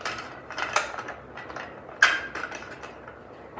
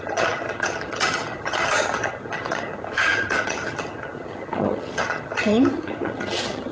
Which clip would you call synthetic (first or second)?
second